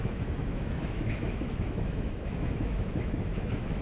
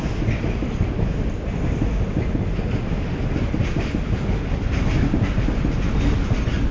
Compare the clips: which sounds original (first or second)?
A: second